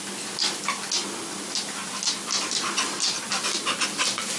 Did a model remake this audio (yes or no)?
no